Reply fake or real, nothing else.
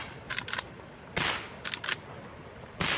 real